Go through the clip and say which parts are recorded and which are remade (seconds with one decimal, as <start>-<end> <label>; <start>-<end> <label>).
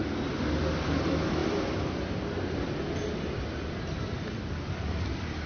0.0-0.6 recorded; 0.6-5.5 remade